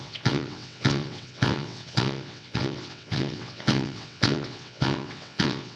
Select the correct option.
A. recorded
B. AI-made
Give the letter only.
B